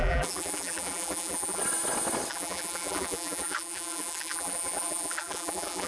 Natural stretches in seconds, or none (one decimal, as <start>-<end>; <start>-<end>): 1.6-2.3